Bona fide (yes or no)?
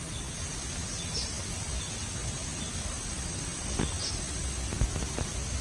yes